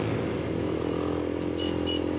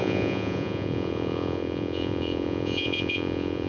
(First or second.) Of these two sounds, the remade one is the second